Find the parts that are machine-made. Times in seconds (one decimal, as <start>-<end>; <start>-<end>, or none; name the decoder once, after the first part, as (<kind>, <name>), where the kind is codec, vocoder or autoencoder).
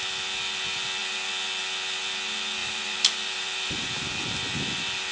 2.6-3.9 (vocoder, BigVGAN v2)